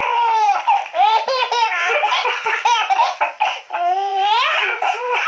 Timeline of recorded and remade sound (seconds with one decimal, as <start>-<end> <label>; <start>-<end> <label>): 0.0-3.2 remade; 3.2-4.1 recorded; 4.1-5.3 remade